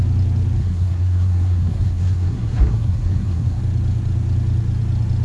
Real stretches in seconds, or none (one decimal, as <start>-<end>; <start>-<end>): 0.0-0.6; 3.6-5.2